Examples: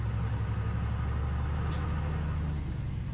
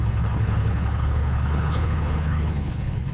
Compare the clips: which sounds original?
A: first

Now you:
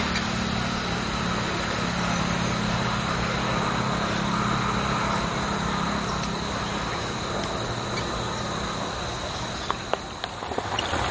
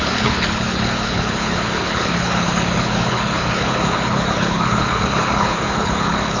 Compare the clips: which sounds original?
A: first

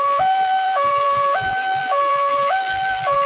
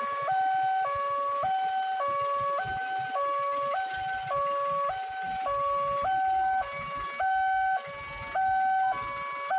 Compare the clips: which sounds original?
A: second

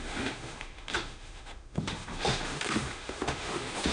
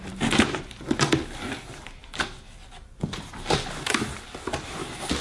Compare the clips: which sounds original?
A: second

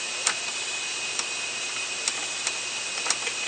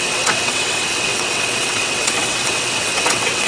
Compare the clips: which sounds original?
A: first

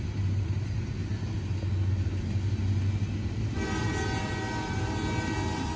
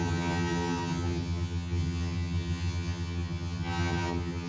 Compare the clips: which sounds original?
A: first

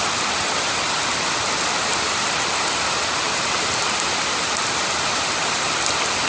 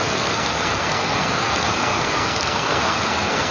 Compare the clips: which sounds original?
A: first